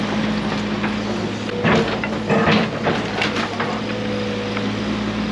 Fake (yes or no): no